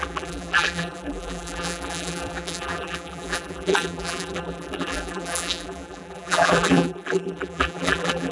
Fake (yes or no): yes